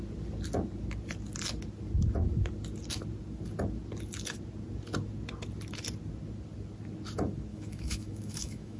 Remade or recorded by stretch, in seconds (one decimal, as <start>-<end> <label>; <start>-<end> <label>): 0.0-7.5 recorded; 7.5-8.8 remade